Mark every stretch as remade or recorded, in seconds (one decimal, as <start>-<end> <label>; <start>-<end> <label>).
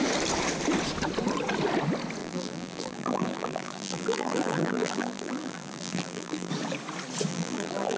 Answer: 0.0-2.2 recorded; 2.2-6.5 remade; 6.5-7.3 recorded; 7.3-8.0 remade